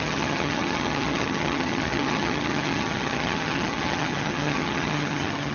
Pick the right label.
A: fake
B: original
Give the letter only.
A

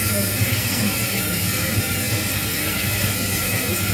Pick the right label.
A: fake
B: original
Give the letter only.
A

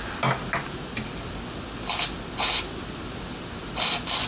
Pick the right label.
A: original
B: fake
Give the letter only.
A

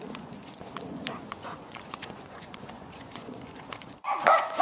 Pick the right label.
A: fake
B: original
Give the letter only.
A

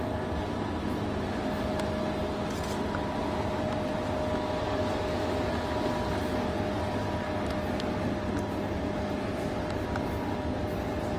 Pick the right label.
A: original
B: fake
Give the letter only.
A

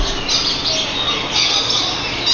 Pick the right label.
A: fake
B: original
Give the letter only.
B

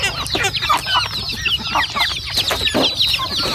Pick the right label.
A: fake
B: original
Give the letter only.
B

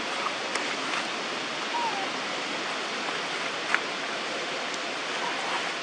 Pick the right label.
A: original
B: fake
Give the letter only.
A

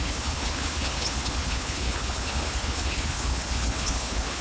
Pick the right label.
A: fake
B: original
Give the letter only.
A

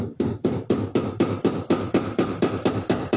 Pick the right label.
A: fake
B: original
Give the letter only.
A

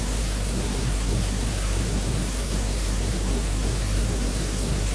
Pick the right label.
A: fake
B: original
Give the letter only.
A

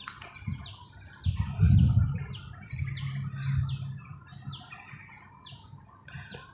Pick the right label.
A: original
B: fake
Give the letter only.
A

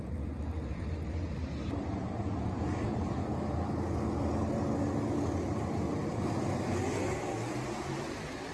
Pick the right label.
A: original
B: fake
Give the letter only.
A